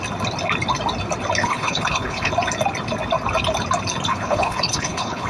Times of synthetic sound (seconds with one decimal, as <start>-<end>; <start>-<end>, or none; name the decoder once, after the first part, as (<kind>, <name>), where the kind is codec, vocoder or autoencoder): 1.4-2.3 (codec, HILCodec); 4.1-5.3